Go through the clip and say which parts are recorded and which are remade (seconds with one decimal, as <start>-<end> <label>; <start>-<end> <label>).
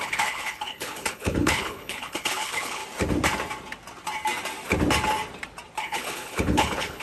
0.0-2.8 remade; 2.8-5.8 recorded; 5.8-7.0 remade